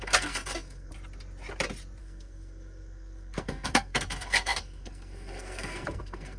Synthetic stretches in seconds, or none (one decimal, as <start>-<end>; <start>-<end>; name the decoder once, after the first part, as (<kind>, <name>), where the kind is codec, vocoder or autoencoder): 0.0-0.9 (codec, SNAC); 2.0-6.4